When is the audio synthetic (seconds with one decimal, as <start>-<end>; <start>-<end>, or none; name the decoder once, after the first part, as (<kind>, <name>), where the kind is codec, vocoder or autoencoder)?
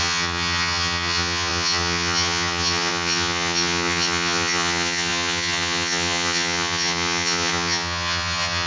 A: 0.0-8.7 (vocoder, HiFi-GAN)